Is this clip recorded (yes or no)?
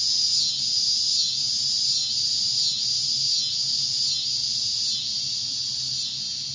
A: yes